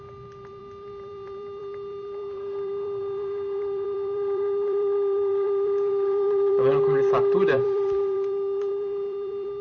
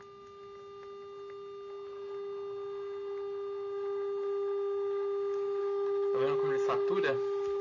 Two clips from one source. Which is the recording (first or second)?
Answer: second